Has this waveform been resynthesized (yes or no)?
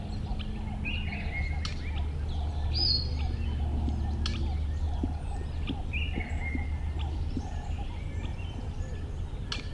no